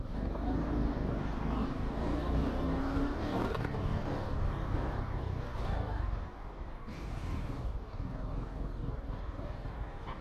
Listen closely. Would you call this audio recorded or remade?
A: remade